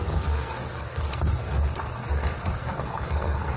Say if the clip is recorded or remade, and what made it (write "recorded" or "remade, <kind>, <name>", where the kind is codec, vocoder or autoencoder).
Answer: remade, codec, SNAC